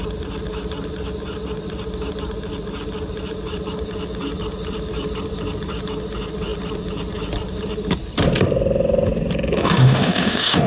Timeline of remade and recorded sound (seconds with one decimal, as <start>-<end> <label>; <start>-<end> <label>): 0.0-9.6 recorded; 9.6-10.7 remade